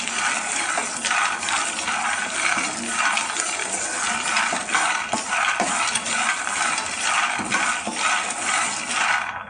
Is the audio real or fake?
real